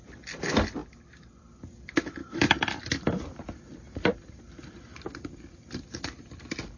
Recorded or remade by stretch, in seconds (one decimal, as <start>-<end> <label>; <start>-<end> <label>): 0.0-2.2 recorded; 2.2-6.3 remade; 6.3-6.8 recorded